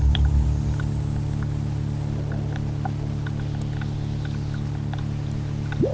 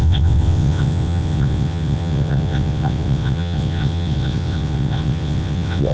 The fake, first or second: second